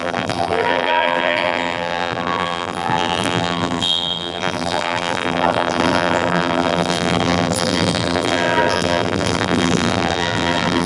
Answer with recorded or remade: remade